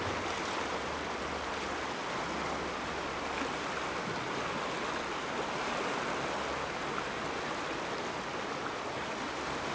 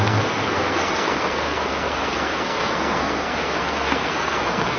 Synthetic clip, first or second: second